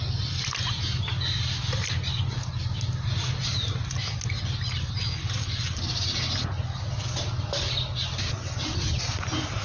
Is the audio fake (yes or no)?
no